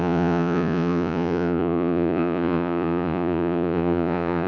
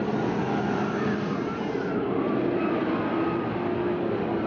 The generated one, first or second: first